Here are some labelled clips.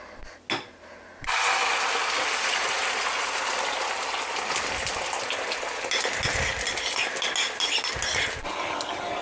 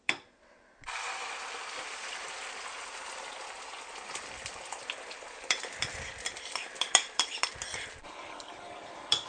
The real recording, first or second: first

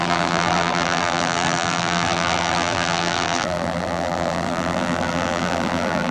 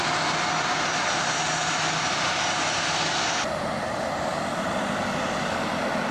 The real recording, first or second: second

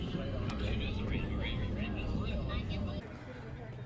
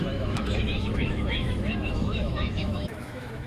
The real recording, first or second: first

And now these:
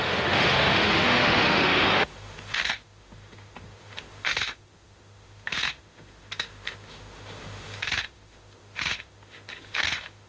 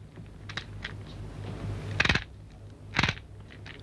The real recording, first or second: second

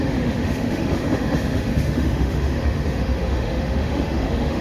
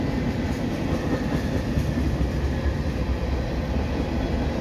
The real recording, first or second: second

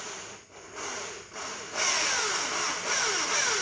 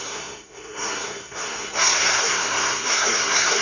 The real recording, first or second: first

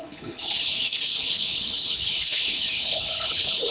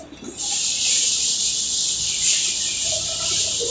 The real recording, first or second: second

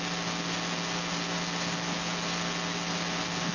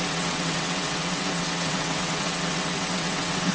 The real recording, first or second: first